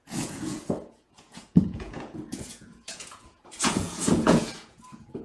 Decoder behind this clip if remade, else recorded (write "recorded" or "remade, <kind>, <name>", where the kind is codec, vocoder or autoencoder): remade, vocoder, Vocos